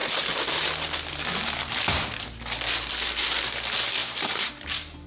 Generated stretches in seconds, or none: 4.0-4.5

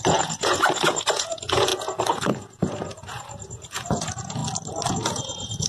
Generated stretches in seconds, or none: 0.0-4.4; 4.9-5.7